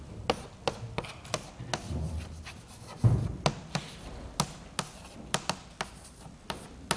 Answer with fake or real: real